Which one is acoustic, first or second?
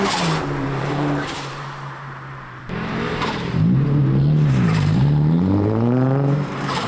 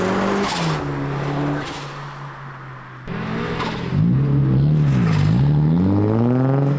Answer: second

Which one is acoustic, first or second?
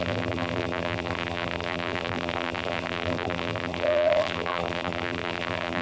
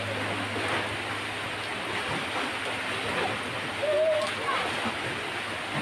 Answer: second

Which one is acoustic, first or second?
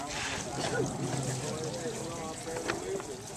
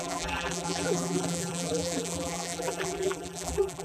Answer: first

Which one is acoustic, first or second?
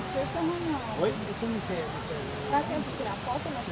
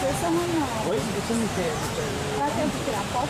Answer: first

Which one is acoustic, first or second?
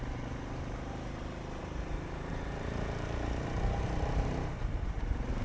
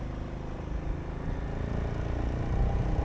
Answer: second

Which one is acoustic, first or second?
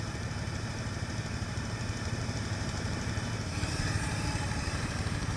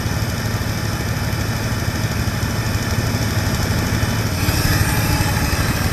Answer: second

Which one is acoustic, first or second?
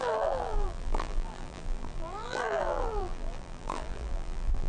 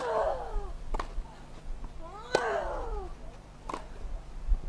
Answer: second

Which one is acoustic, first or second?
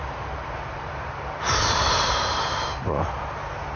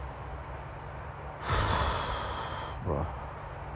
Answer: second